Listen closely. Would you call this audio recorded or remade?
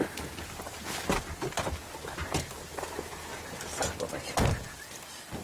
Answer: recorded